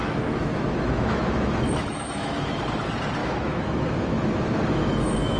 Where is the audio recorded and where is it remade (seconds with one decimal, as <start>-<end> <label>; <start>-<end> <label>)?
0.0-2.6 remade; 2.6-3.2 recorded; 3.2-5.4 remade